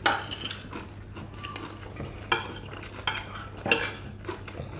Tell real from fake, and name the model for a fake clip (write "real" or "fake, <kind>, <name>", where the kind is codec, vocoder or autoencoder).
real